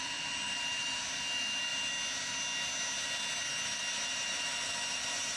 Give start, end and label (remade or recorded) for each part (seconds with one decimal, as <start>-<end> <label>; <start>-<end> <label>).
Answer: 0.0-5.4 recorded